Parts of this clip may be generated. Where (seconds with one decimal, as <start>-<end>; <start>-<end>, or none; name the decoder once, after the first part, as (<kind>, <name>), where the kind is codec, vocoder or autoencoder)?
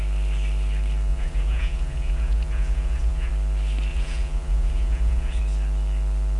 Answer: 1.1-3.3 (vocoder, Vocos); 3.9-5.4